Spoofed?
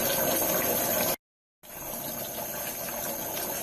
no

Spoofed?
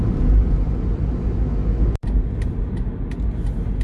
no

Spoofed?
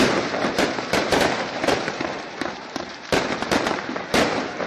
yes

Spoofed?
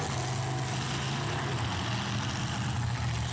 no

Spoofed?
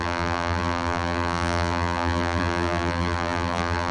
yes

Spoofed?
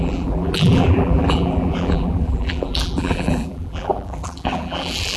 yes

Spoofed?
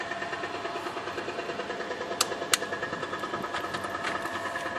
no